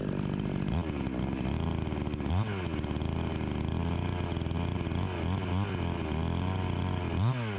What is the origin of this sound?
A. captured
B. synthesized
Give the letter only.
A